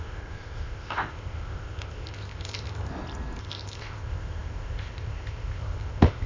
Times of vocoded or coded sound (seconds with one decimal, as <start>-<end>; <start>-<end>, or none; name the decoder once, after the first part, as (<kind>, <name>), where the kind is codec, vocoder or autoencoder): 0.0-2.9 (codec, ZipCodec); 3.4-6.3